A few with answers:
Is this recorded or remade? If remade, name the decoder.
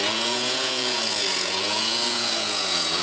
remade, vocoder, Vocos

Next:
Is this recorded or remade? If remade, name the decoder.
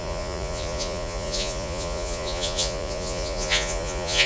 remade, vocoder, Vocos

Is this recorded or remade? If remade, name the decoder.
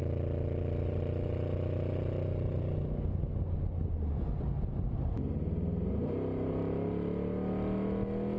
recorded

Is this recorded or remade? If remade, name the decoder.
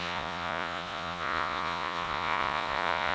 remade, vocoder, Vocos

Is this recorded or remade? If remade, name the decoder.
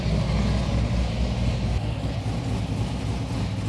recorded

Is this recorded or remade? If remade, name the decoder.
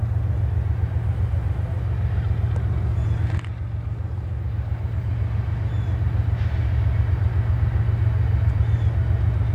recorded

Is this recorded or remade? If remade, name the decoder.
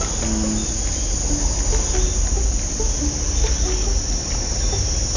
recorded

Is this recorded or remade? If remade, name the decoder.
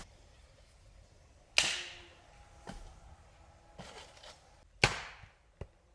recorded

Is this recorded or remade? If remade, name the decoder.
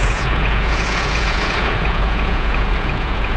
remade, vocoder, Vocos